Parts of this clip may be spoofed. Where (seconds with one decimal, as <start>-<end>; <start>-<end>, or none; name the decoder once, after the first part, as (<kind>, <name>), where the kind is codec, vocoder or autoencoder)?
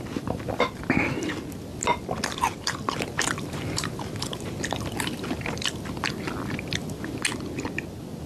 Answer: 1.7-6.1 (vocoder, BigVGAN v2)